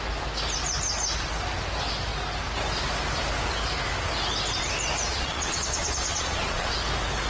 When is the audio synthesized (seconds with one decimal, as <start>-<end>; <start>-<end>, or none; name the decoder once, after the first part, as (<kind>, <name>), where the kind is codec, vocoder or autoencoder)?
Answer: 5.1-6.7 (vocoder, Vocos)